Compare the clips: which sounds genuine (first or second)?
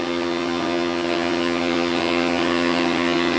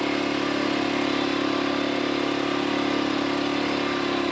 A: second